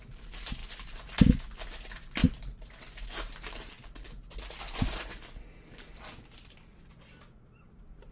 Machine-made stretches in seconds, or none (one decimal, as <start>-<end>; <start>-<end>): none